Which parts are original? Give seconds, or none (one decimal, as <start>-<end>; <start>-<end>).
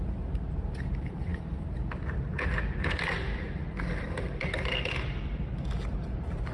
0.0-6.5